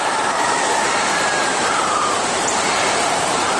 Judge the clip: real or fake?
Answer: fake